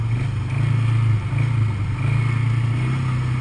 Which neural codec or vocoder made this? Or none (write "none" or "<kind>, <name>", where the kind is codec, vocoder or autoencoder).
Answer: none